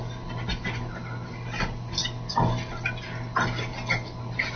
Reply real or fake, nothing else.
real